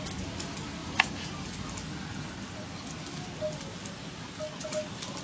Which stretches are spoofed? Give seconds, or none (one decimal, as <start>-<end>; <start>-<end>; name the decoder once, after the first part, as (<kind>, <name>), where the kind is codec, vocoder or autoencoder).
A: 0.8-1.3 (vocoder, Vocos)